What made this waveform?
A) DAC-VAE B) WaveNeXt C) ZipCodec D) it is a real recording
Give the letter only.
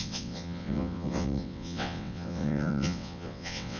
B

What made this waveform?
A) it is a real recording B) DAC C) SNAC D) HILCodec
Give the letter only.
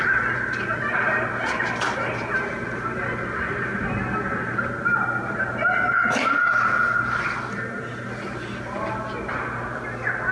A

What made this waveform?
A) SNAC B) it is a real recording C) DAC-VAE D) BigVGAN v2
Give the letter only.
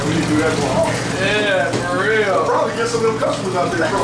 B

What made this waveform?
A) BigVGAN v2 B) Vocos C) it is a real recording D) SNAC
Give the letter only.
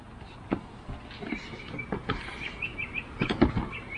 C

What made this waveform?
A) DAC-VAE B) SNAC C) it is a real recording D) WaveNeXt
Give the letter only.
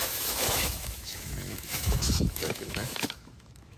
A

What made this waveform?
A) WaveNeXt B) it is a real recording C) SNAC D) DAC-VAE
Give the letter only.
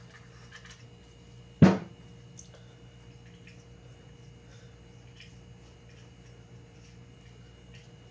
B